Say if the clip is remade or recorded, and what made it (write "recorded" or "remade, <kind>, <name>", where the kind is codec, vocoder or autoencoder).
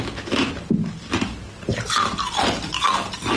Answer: recorded